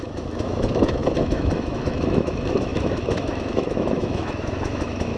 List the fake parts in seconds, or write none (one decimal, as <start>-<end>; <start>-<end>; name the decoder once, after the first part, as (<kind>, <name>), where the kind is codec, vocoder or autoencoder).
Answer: 0.0-5.2 (autoencoder, DAC-VAE)